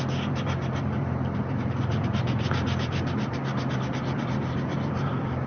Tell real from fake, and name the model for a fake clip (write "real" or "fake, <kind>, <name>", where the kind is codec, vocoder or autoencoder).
fake, vocoder, BigVGAN v2